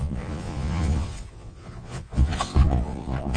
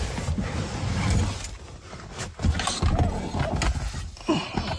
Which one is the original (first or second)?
second